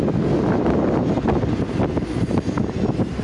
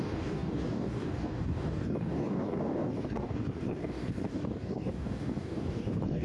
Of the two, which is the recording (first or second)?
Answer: first